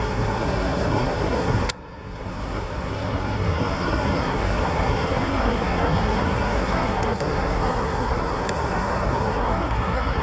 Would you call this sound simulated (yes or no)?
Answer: yes